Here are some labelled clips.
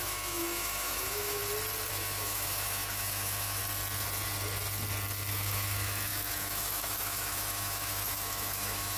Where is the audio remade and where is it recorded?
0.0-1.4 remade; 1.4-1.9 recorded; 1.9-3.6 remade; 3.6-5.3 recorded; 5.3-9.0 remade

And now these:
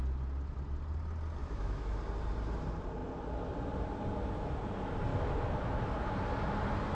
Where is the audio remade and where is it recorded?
0.0-1.4 recorded; 1.4-2.0 remade; 2.0-5.1 recorded; 5.1-5.9 remade; 5.9-6.9 recorded

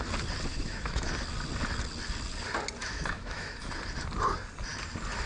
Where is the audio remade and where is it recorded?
0.0-0.5 recorded; 0.5-1.1 remade; 1.1-2.8 recorded; 2.8-3.7 remade; 3.7-5.3 recorded

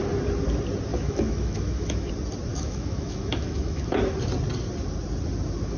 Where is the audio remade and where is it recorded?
0.0-0.9 recorded; 0.9-2.1 remade; 2.1-2.5 recorded; 2.5-4.0 remade; 4.0-5.8 recorded

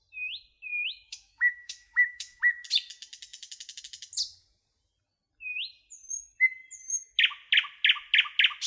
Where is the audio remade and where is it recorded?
0.0-0.7 recorded; 0.7-2.4 remade; 2.4-8.7 recorded

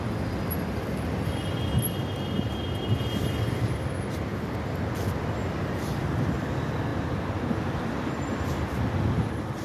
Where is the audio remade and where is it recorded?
0.0-9.6 recorded

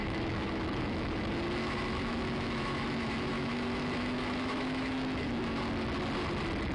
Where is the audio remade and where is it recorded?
0.0-1.2 remade; 1.2-1.6 recorded; 1.6-5.6 remade; 5.6-6.7 recorded

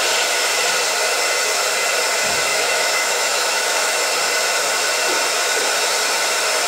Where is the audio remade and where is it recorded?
0.0-2.5 recorded; 2.5-4.0 remade; 4.0-6.7 recorded